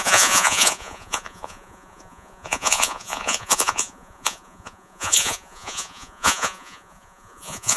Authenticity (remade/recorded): remade